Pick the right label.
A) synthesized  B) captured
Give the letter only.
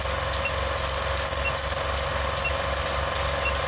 B